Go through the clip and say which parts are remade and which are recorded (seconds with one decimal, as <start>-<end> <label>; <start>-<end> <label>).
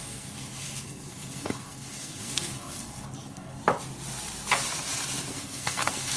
0.0-3.6 remade; 3.6-5.3 recorded; 5.3-6.2 remade